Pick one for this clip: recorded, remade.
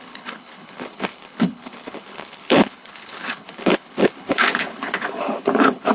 remade